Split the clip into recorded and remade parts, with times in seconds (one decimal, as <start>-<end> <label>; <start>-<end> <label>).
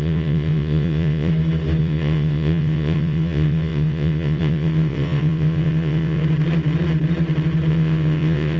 0.0-1.3 remade; 1.3-1.8 recorded; 1.8-6.2 remade; 6.2-7.7 recorded; 7.7-8.6 remade